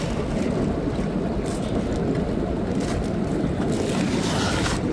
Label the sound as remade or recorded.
recorded